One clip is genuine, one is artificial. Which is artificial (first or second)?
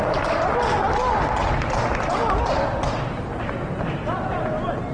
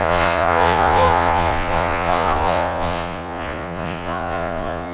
second